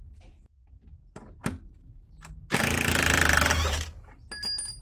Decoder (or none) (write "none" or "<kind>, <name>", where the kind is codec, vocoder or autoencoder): none